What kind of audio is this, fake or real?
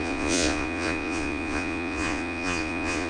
fake